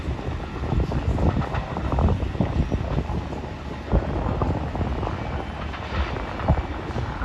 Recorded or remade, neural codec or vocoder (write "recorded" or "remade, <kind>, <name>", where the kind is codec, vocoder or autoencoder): recorded